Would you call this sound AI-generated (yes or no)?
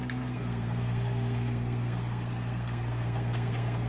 yes